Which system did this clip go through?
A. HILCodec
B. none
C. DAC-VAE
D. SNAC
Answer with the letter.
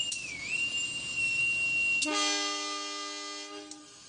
B